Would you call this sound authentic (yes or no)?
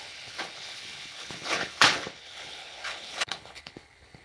no